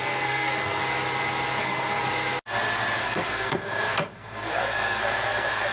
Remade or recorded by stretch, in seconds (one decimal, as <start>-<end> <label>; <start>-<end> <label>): 0.0-0.8 remade; 0.8-1.6 recorded; 1.6-2.0 remade; 2.0-3.0 recorded; 3.0-5.7 remade